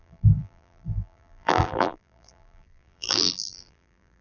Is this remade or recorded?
remade